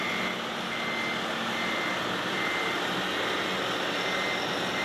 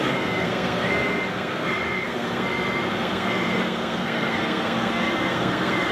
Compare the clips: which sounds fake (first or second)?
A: second